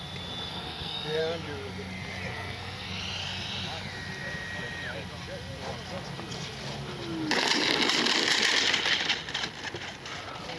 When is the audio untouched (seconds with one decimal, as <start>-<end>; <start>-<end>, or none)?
0.0-0.5; 1.2-2.3; 3.0-10.6